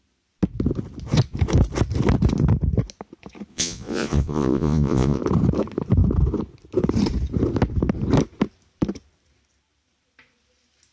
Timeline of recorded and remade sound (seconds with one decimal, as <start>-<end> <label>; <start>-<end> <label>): 0.0-3.5 recorded; 3.5-5.2 remade; 5.2-10.9 recorded